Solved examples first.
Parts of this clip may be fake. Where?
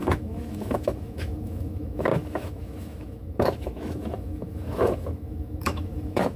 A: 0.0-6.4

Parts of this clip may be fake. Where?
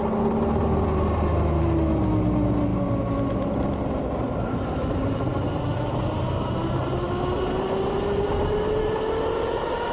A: none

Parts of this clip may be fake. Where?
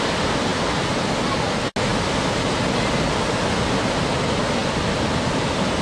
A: none